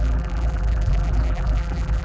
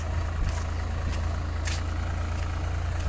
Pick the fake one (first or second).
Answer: first